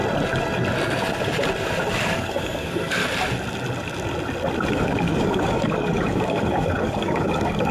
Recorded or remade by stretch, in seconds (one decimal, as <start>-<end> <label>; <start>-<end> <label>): 0.0-1.9 recorded; 1.9-3.0 remade; 3.0-4.7 recorded; 4.7-7.7 remade